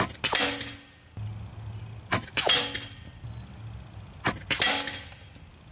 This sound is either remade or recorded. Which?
recorded